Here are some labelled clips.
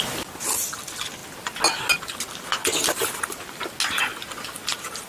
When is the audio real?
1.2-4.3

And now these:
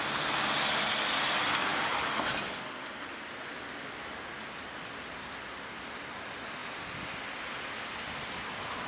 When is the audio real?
0.0-8.9

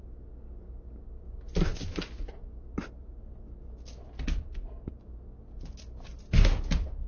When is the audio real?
0.0-7.1